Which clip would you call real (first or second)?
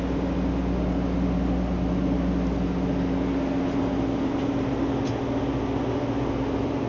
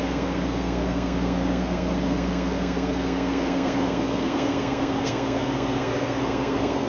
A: first